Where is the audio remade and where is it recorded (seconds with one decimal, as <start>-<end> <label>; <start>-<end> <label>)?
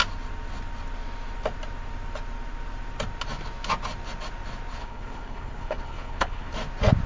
0.0-4.8 recorded; 4.8-6.5 remade; 6.5-7.1 recorded